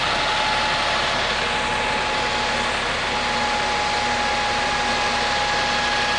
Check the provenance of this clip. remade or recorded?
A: recorded